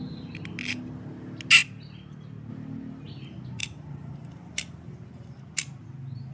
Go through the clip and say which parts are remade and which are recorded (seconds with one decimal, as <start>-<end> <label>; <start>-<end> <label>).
0.0-3.6 recorded; 3.6-4.3 remade; 4.3-6.3 recorded